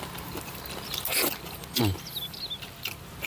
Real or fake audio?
real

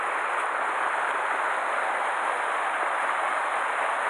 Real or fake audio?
real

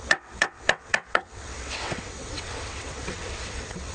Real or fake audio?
fake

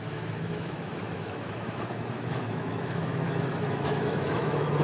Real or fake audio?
fake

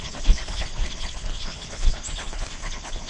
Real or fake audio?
fake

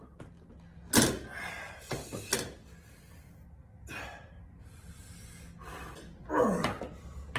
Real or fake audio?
real